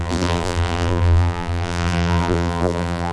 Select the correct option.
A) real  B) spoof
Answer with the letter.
B